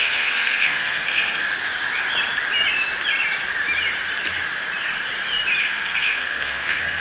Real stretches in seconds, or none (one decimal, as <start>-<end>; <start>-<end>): 1.4-5.6